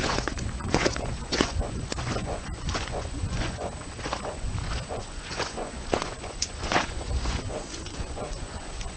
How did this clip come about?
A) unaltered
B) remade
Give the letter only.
B